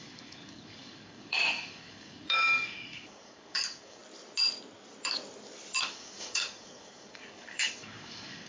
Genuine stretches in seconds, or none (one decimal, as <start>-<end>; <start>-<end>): 4.0-5.8